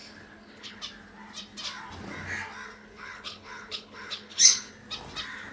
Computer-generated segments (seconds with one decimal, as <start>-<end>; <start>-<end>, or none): 0.0-0.8; 2.8-4.7